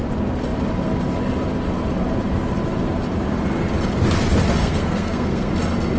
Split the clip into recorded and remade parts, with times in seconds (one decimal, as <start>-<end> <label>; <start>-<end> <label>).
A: 0.0-4.6 recorded; 4.6-5.5 remade; 5.5-6.0 recorded